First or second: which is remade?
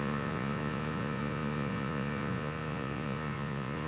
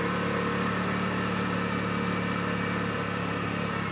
first